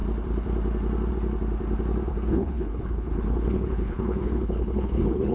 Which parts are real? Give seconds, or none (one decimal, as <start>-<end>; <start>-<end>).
0.0-2.1